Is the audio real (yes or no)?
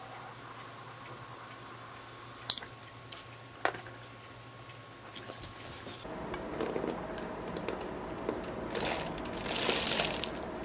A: yes